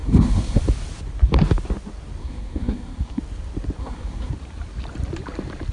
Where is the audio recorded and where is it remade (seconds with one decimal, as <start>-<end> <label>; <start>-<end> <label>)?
0.0-0.6 remade; 0.6-2.2 recorded; 2.2-3.2 remade; 3.2-3.8 recorded; 3.8-4.3 remade; 4.3-5.7 recorded